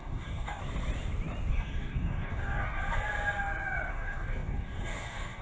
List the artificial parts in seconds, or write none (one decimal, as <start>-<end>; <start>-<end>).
0.0-0.6; 1.5-2.8; 3.9-5.4